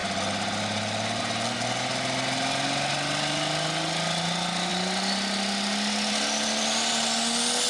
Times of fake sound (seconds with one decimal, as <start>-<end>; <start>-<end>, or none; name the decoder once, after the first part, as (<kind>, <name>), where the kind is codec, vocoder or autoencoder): none